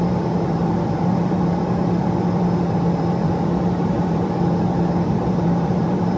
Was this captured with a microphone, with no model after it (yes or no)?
no